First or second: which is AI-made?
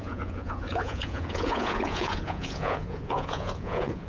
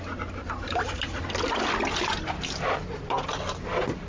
first